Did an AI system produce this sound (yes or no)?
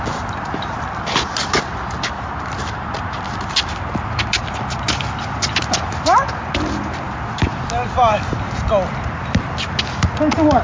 no